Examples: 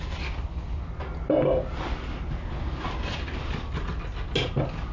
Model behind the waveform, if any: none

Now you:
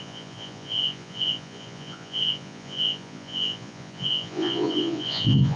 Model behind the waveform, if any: vocoder, Vocos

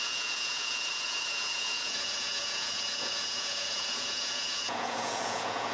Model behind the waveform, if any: vocoder, Vocos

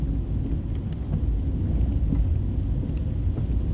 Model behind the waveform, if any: none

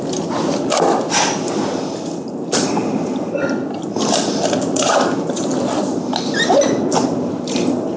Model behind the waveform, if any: none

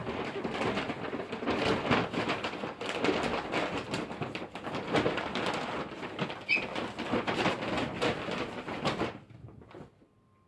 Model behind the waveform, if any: none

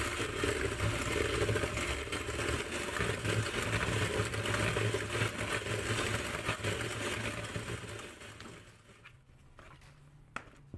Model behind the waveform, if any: none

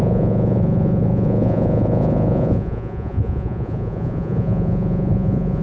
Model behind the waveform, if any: vocoder, Vocos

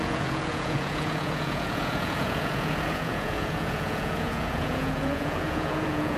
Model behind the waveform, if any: vocoder, Vocos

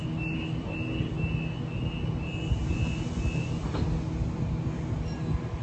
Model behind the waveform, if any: none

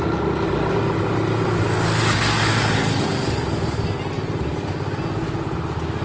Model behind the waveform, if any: none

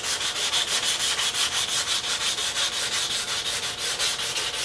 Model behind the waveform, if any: none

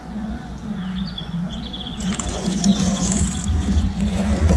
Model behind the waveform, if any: vocoder, Vocos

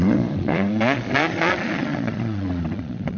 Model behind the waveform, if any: vocoder, Vocos